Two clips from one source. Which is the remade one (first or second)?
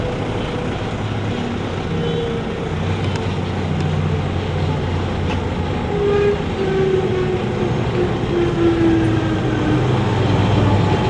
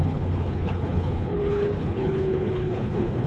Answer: second